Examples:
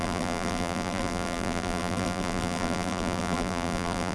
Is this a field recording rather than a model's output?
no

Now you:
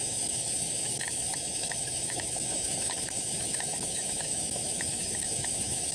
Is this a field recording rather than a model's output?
no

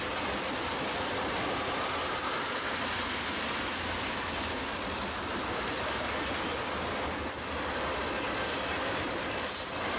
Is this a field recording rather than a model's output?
yes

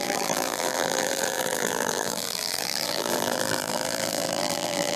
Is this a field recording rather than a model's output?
no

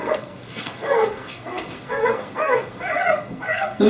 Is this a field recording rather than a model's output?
no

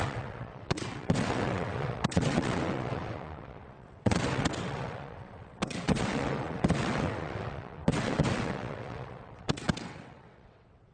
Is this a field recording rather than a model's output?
no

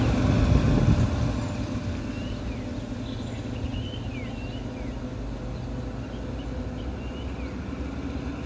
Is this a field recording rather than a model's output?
yes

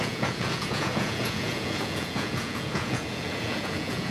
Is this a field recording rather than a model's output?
no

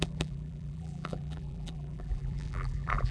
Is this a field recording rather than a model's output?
no